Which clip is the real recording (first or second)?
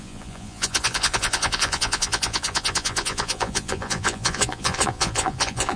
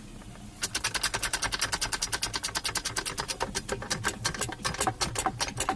second